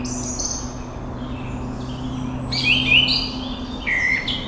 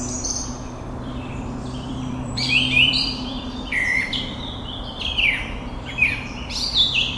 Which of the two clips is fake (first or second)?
second